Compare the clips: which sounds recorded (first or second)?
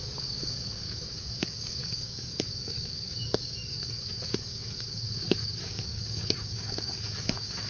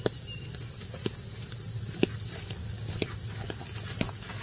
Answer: second